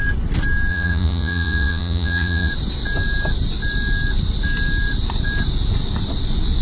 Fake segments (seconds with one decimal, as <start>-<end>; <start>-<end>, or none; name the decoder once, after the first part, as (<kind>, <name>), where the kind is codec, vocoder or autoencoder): 0.7-2.5 (vocoder, Vocos)